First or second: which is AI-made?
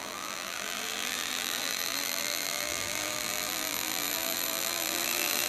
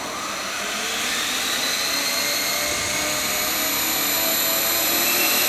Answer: first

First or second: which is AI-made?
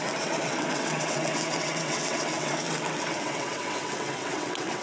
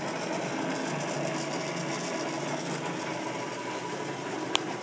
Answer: first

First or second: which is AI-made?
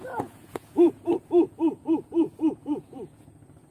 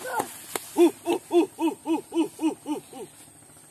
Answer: first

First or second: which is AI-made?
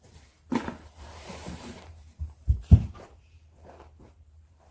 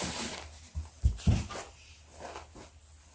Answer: first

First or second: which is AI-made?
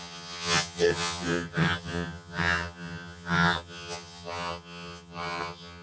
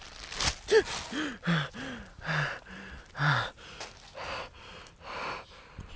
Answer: first